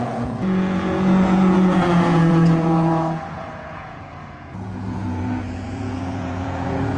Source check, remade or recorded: remade